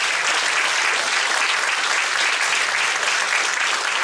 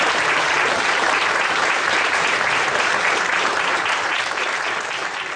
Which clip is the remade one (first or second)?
second